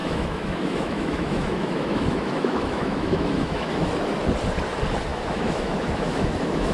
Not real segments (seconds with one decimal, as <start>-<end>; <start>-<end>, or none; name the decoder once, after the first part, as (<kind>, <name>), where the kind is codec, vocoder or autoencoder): 0.0-3.9 (autoencoder, DAC-VAE); 5.1-6.7